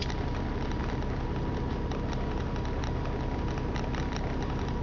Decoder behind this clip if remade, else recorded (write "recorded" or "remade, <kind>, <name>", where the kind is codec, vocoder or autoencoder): recorded